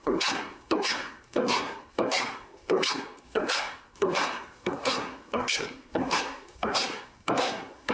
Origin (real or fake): fake